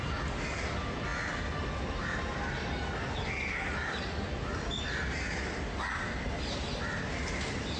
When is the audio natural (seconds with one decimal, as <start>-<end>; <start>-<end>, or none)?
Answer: 0.0-7.8